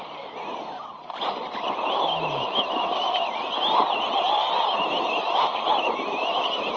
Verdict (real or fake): real